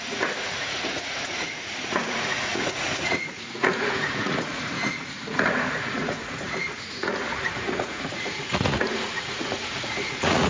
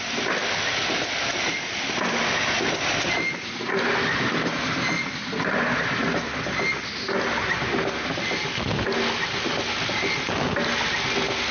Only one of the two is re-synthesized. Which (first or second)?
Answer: first